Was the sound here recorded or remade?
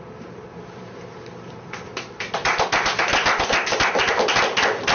recorded